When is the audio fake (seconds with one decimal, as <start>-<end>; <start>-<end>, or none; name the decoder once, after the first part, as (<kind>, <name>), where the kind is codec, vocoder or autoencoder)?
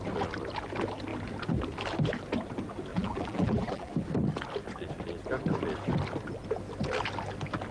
2.9-3.9 (vocoder, BigVGAN v2)